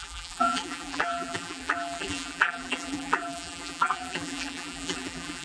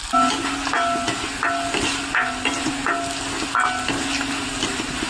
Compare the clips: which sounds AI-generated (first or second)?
first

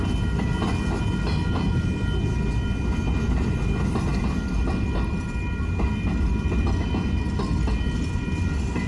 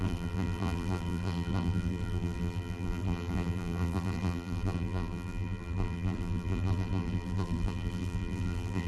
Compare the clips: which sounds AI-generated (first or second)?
second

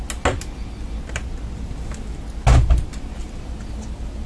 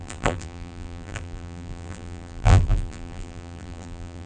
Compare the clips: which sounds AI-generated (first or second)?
second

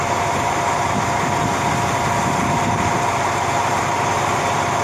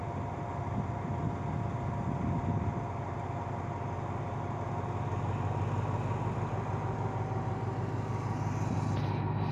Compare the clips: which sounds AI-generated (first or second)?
first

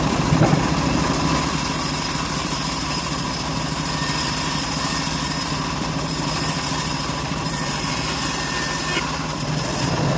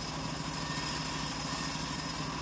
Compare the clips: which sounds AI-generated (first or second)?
first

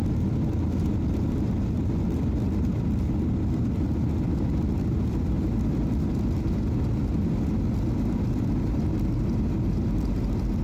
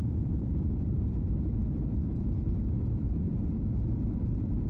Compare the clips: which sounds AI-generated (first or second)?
second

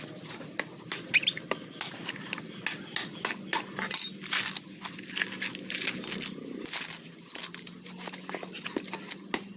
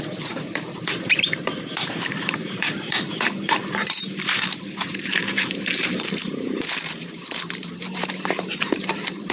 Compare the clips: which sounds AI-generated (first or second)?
second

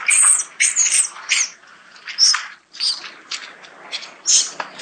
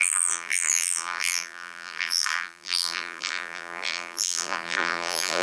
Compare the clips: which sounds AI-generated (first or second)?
second